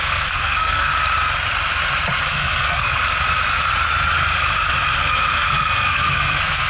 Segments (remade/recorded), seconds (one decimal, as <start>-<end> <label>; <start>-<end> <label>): 0.0-0.9 remade; 0.9-2.3 recorded; 2.3-2.9 remade; 2.9-5.0 recorded; 5.0-6.7 remade